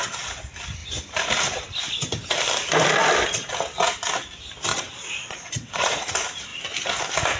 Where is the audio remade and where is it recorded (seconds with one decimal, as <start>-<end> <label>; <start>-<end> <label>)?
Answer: 0.0-4.7 recorded; 4.7-6.1 remade; 6.1-7.4 recorded